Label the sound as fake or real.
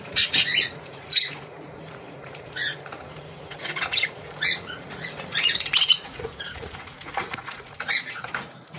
fake